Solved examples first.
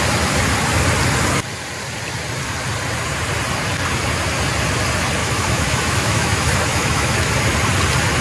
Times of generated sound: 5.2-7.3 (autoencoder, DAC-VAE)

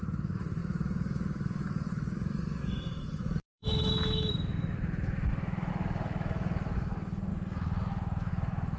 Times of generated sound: 0.0-7.3 (autoencoder, DAC-VAE); 8.3-8.8

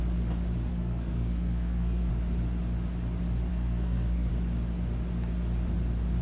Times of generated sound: 0.7-2.1 (codec, SNAC); 3.5-4.3

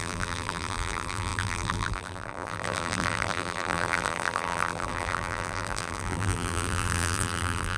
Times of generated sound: 0.0-7.8 (vocoder, BigVGAN v2)

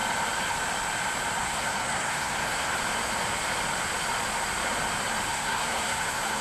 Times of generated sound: 1.4-2.7 (codec, SNAC); 5.3-6.4

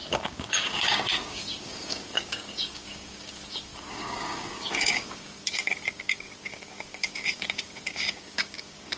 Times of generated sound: 0.0-9.0 (codec, DAC)

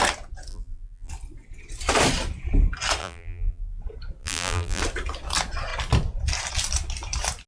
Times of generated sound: 0.5-1.1 (vocoder, BigVGAN v2); 3.0-3.8; 4.2-4.8